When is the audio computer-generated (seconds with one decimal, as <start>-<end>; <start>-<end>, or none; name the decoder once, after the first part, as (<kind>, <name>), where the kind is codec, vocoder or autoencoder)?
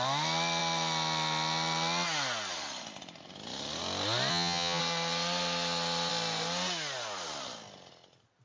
4.3-4.8 (vocoder, HiFi-GAN)